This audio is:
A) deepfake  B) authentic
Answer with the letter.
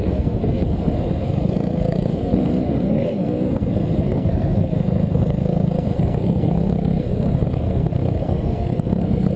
A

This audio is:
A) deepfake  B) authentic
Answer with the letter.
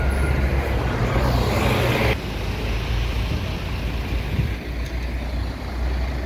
B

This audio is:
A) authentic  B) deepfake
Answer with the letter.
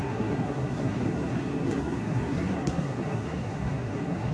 B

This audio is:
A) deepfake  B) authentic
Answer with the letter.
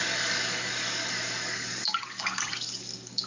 A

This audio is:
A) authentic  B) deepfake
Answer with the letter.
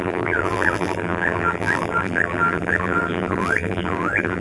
B